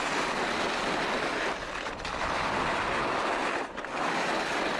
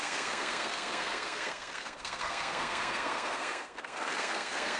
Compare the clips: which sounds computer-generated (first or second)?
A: second